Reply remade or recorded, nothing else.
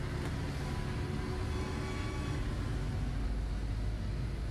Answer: recorded